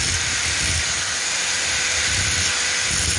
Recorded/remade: recorded